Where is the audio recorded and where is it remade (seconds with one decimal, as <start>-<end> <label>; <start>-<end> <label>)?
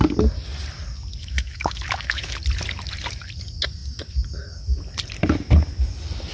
0.0-1.2 recorded; 1.2-2.4 remade; 2.4-6.3 recorded